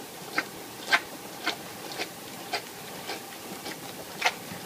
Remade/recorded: recorded